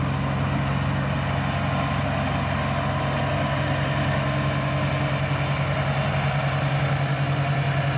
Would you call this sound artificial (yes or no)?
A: no